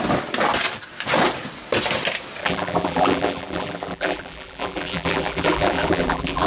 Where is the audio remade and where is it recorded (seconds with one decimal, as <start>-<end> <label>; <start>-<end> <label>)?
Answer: 0.0-2.4 recorded; 2.4-6.5 remade